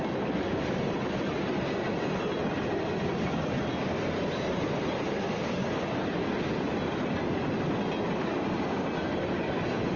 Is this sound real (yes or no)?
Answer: yes